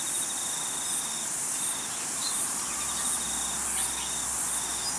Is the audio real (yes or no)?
yes